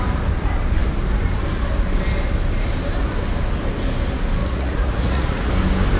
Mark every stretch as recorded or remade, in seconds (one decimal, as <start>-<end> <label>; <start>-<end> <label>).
0.0-4.4 recorded; 4.4-5.5 remade; 5.5-6.0 recorded